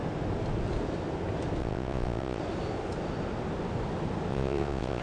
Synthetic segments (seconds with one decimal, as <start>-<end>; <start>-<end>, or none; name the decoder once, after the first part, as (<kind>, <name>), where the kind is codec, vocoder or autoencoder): 1.6-2.4 (vocoder, Vocos); 4.3-5.0